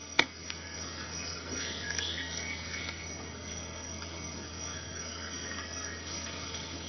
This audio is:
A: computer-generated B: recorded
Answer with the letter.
A